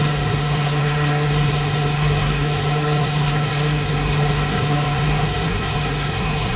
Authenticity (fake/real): fake